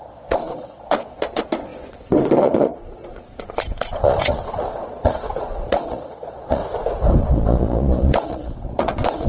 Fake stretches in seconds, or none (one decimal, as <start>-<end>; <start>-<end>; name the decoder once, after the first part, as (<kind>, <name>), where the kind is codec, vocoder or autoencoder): 0.0-6.6 (vocoder, Vocos); 7.2-9.3